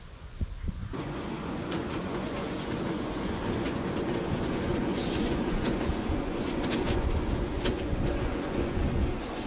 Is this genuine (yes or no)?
no